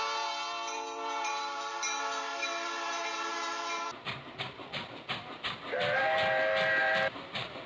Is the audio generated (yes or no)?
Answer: no